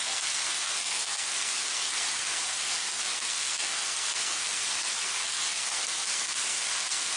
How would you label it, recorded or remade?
remade